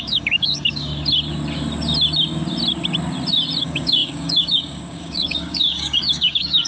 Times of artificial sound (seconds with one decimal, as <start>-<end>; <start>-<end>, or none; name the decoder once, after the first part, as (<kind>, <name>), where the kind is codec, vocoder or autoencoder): 0.0-0.9 (codec, DAC); 3.6-6.7